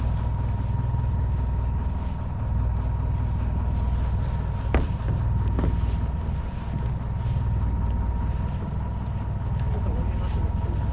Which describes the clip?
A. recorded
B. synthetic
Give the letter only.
A